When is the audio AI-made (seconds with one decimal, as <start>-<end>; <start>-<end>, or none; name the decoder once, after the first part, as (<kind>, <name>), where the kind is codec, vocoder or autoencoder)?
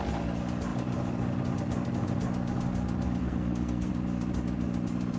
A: 3.2-3.9 (codec, SNAC)